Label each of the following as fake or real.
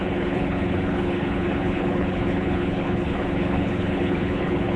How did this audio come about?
fake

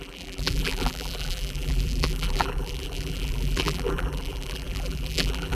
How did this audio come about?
fake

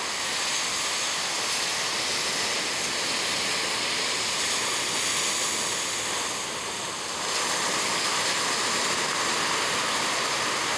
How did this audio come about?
real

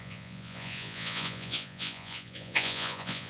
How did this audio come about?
fake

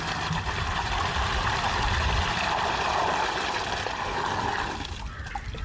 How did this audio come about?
real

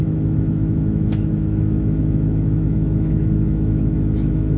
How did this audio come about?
fake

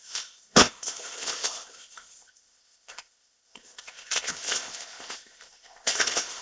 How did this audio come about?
fake